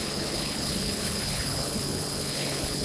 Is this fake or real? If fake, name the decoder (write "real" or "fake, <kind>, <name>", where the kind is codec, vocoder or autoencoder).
fake, codec, HILCodec